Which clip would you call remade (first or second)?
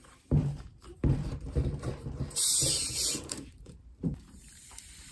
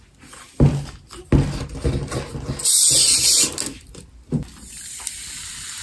first